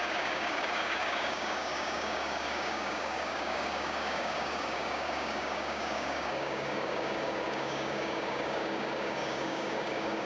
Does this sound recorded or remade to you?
remade